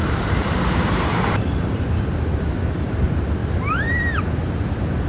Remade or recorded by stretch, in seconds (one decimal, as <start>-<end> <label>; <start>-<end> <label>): 0.0-2.0 remade; 2.0-5.1 recorded